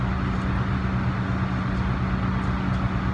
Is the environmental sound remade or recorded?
recorded